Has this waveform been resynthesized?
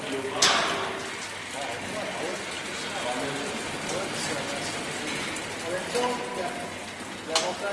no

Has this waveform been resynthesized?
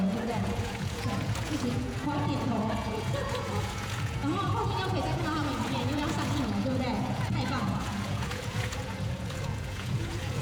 yes